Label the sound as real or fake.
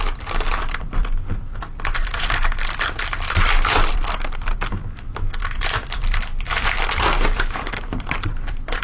fake